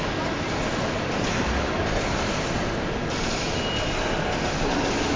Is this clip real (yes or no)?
yes